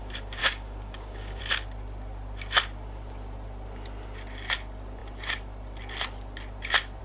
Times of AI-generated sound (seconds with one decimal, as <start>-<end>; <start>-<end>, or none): 0.4-1.4